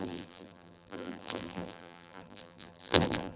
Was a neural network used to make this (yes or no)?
yes